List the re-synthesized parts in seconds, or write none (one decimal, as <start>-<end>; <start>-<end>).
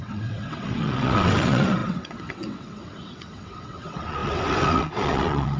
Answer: 0.0-5.6